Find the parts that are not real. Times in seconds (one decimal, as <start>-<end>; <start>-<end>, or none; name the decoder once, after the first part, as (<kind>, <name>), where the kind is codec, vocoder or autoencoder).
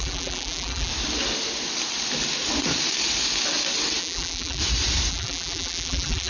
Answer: 0.0-0.9 (vocoder, BigVGAN v2); 4.0-4.6; 5.1-6.3